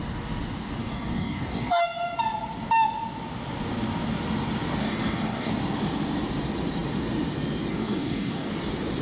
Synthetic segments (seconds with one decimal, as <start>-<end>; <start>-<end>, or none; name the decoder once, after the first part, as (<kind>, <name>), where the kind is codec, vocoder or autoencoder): 0.8-1.8 (codec, DAC); 4.8-5.5; 7.7-8.5